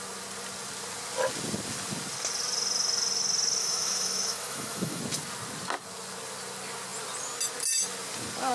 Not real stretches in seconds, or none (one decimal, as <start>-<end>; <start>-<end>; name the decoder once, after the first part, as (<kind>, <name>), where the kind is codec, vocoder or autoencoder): 3.6-5.0 (autoencoder, DAC-VAE)